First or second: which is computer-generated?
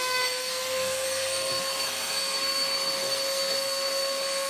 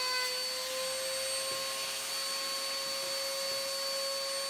first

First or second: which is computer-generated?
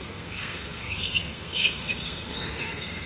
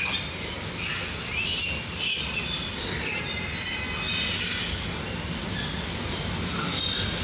first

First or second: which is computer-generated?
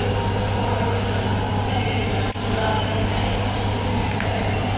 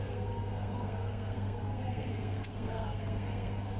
second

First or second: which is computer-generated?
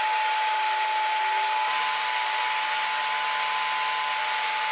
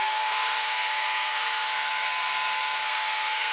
second